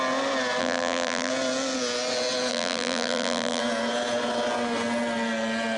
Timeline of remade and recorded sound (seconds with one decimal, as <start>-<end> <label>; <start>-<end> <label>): 0.0-0.6 recorded; 0.6-1.3 remade; 1.3-2.5 recorded; 2.5-3.6 remade; 3.6-5.8 recorded